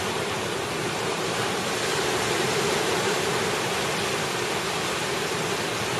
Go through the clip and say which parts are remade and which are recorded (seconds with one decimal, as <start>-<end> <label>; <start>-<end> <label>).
0.0-0.8 recorded; 0.8-1.9 remade; 1.9-6.0 recorded